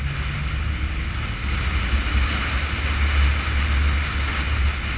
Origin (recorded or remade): recorded